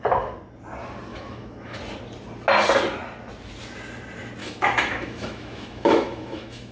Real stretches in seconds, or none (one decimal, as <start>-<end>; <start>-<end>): 0.0-1.1; 1.8-4.4